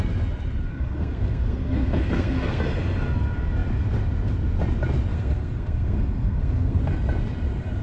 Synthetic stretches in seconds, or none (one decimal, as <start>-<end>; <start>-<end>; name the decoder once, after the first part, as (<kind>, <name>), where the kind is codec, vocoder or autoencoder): 0.7-2.6 (codec, SNAC); 5.1-6.8

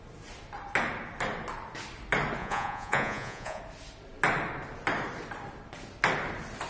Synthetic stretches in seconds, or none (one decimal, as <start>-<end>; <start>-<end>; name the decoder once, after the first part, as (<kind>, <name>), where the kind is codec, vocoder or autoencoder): 2.4-3.6 (vocoder, Vocos)

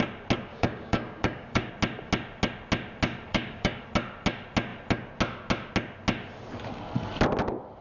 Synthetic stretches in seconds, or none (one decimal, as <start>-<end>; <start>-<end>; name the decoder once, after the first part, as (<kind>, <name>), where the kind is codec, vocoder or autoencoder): 0.5-1.7 (codec, DAC); 3.3-3.8

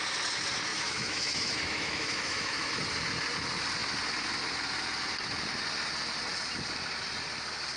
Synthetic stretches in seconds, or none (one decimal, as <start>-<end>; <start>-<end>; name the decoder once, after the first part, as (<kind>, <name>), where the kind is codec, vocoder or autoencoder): 0.7-2.7 (autoencoder, DAC-VAE)